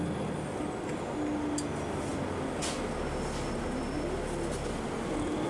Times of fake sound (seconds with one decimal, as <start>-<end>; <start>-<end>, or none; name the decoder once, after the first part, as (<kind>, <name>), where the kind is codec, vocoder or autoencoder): none